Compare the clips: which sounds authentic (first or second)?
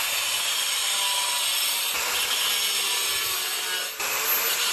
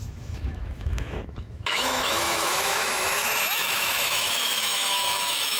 first